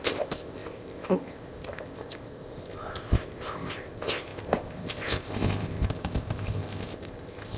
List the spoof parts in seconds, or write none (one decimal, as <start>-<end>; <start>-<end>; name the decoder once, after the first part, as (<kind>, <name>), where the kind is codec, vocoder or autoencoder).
0.0-7.6 (codec, ZipCodec)